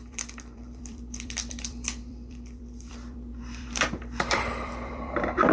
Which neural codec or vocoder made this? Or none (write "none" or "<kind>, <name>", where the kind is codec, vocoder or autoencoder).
vocoder, BigVGAN v2